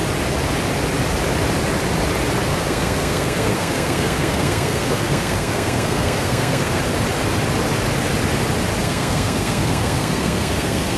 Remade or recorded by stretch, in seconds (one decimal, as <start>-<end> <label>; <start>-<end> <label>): 0.0-2.5 recorded; 2.5-6.8 remade; 6.8-8.8 recorded; 8.8-11.0 remade